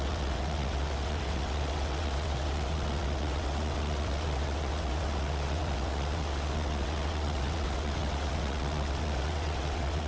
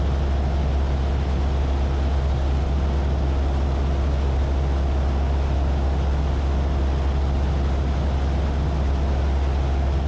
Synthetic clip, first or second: first